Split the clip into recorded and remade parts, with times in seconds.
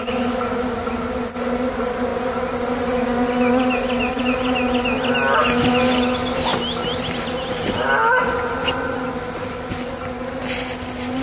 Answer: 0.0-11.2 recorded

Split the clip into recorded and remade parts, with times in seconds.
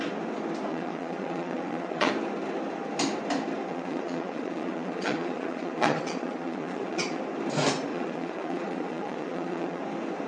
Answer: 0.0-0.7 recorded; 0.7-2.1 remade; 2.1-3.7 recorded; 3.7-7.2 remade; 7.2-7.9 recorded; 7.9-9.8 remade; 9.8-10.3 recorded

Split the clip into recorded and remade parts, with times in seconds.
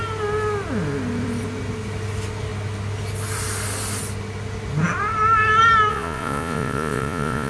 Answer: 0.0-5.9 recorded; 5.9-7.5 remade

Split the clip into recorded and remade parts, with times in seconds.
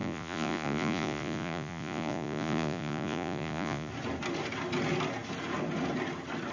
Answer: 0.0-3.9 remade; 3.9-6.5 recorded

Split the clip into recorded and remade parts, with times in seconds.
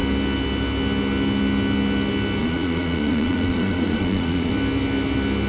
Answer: 0.0-2.4 recorded; 2.4-4.5 remade; 4.5-5.5 recorded